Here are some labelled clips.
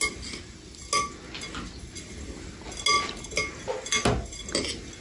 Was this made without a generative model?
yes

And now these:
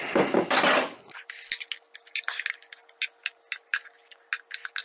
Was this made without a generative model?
yes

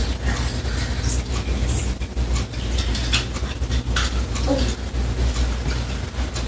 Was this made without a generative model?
yes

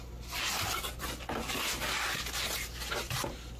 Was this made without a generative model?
yes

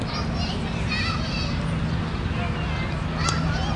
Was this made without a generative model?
yes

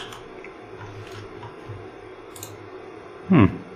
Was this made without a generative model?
yes